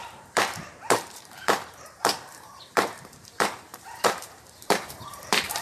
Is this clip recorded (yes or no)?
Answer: no